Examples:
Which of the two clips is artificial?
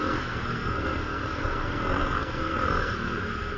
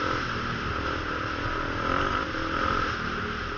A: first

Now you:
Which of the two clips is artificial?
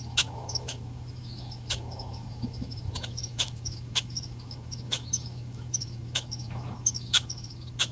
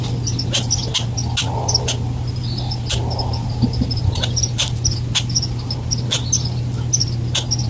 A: first